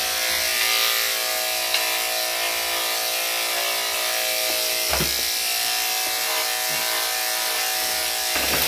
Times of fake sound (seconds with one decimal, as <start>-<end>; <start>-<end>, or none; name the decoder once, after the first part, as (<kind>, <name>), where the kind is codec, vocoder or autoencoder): none